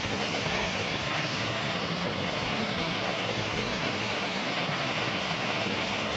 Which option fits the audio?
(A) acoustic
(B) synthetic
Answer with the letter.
B